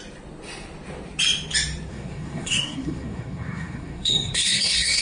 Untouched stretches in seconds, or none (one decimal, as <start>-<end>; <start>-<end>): 0.0-1.9